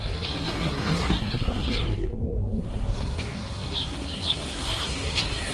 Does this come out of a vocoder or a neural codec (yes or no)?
yes